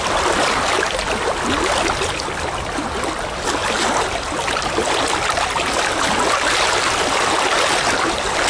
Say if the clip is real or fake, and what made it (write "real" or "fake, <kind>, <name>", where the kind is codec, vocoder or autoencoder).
real